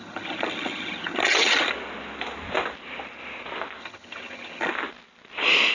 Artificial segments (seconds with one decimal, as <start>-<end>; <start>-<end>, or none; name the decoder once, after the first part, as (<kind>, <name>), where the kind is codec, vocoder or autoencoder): 0.0-1.7 (vocoder, HiFi-GAN); 3.8-4.7